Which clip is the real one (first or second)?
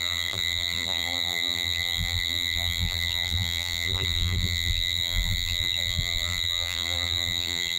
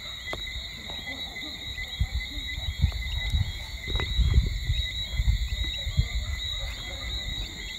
second